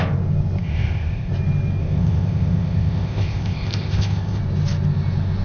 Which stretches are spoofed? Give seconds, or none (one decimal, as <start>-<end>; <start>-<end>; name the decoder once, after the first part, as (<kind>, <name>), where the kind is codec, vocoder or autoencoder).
0.6-1.3 (codec, ZipCodec); 1.8-4.4